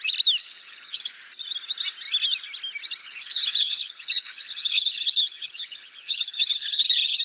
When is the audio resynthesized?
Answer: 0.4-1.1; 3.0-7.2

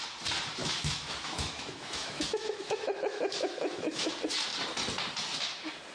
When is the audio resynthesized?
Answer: 0.6-4.1

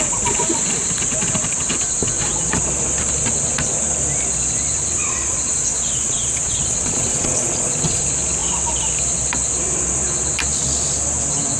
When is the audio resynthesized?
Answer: 5.0-8.0